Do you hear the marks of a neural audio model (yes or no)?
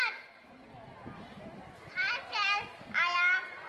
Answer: no